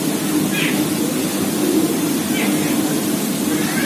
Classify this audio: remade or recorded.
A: recorded